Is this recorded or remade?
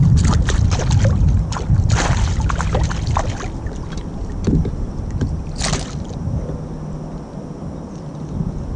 recorded